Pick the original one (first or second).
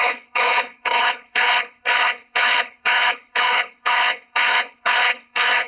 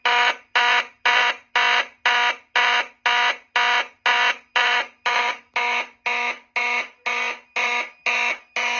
second